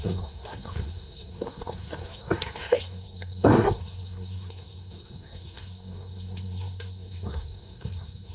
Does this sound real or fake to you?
fake